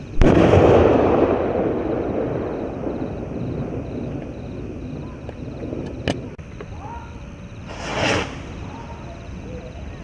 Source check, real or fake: real